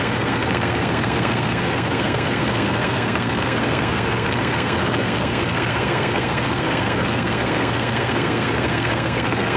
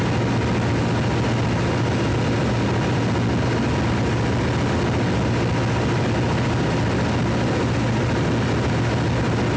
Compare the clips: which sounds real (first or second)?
second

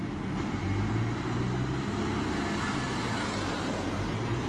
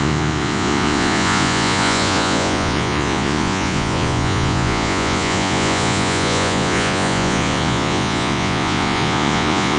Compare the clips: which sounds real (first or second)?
first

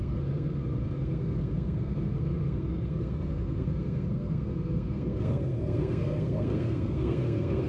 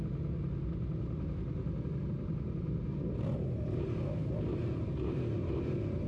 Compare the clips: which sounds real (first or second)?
second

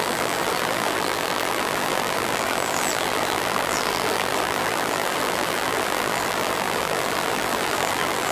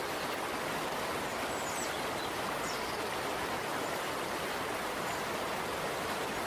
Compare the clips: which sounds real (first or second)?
second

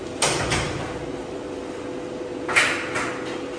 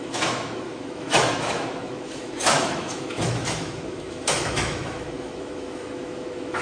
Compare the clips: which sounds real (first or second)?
first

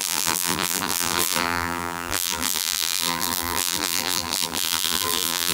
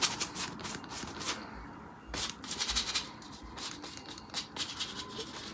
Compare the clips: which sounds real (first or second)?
second